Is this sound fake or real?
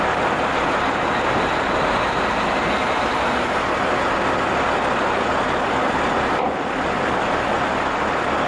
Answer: real